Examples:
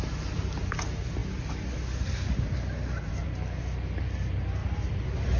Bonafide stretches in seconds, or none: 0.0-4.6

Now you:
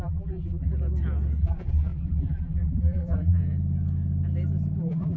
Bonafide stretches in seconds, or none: 0.7-1.4; 3.4-4.8

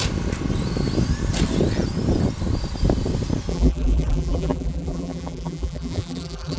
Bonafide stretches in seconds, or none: 0.0-3.5

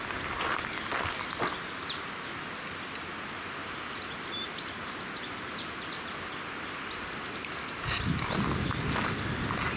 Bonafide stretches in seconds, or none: 0.0-3.6; 6.3-9.8